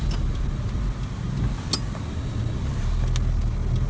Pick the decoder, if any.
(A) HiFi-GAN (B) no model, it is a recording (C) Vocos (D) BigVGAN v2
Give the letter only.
B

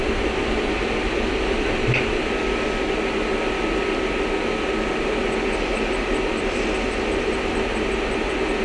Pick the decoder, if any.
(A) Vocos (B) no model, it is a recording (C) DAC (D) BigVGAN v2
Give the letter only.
B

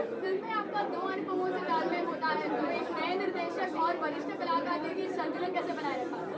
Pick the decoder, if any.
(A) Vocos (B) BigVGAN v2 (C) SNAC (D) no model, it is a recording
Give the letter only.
B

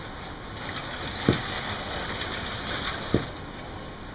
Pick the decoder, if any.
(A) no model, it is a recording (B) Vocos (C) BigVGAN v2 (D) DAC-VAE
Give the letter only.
A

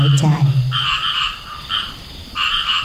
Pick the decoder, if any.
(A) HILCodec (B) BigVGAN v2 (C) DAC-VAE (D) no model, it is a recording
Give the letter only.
B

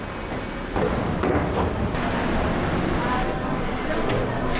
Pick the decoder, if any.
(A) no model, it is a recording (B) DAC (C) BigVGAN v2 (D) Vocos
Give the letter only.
A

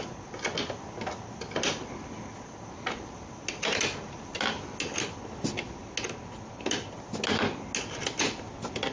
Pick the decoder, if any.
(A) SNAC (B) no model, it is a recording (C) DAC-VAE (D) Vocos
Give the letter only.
B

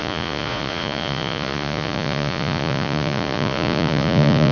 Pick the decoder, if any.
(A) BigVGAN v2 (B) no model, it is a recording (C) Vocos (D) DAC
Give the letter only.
C